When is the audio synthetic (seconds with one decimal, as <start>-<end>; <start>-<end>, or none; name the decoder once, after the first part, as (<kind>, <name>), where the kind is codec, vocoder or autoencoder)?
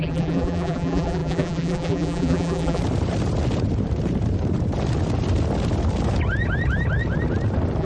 0.0-2.8 (vocoder, BigVGAN v2)